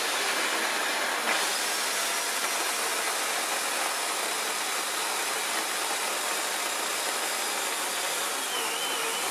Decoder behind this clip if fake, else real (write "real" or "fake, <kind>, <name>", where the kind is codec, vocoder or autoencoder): real